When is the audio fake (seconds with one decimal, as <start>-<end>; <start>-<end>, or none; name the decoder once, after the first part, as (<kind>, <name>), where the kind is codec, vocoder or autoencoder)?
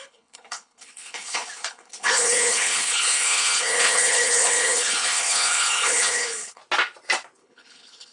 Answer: 0.0-6.6 (codec, HILCodec); 7.4-8.1